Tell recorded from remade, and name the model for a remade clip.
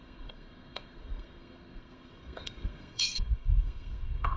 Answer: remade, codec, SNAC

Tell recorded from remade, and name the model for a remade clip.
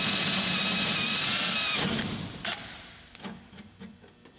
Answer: recorded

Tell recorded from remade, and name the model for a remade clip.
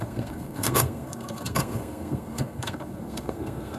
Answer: remade, codec, SNAC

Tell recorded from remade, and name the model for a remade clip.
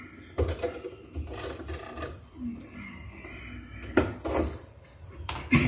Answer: recorded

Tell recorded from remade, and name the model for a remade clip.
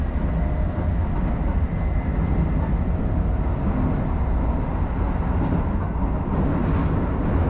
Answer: recorded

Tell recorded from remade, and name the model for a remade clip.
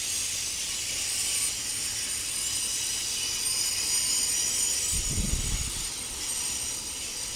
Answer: recorded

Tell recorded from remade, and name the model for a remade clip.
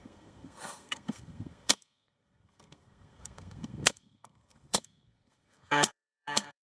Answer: remade, codec, SNAC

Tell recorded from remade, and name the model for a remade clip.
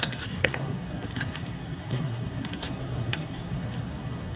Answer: remade, codec, SNAC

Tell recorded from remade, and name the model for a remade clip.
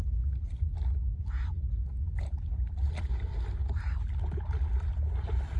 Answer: recorded